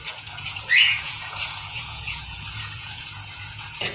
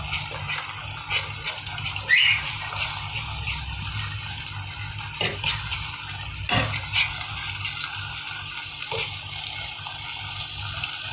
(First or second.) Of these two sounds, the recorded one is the second